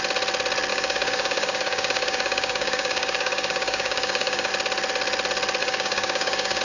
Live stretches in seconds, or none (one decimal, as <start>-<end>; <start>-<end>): 0.0-0.7; 4.5-5.6